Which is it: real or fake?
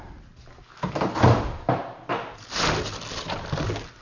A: real